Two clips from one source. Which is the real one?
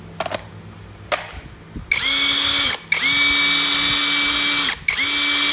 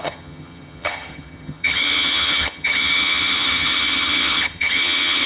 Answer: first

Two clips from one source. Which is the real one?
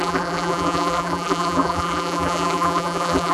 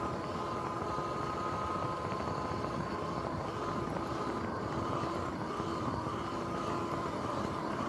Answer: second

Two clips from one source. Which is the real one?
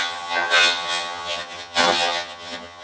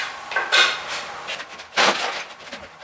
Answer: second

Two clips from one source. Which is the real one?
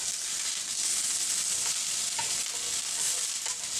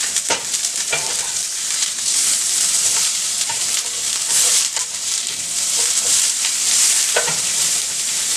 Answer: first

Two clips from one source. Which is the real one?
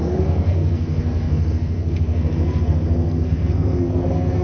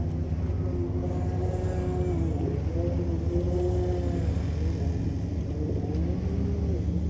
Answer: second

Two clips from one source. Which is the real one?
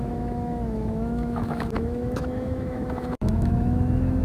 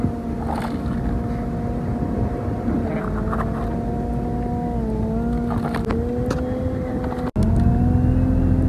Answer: second